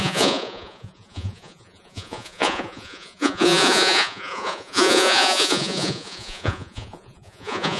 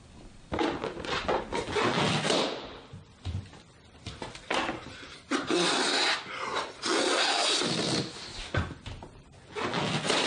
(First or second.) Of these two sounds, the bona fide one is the second